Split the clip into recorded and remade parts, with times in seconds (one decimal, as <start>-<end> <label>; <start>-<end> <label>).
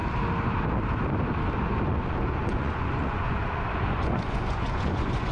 0.0-1.8 recorded; 1.8-5.3 remade